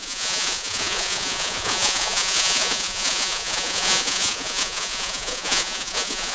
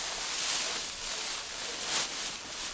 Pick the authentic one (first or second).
second